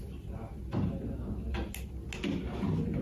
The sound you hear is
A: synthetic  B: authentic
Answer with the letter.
B